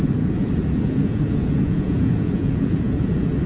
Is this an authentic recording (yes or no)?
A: no